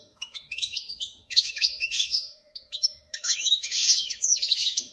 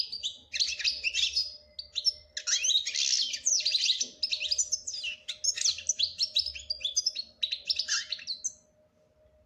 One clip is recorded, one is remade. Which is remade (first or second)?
first